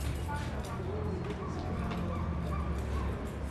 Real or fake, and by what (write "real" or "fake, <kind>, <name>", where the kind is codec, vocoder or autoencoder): real